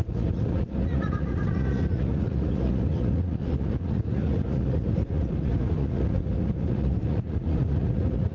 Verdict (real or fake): fake